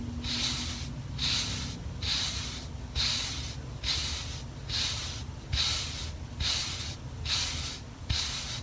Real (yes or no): yes